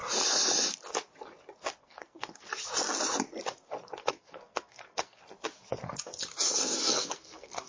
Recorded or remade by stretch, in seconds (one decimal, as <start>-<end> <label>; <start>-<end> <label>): 0.0-1.8 recorded; 1.8-2.5 remade; 2.5-4.0 recorded; 4.0-5.2 remade; 5.2-6.3 recorded; 6.3-7.7 remade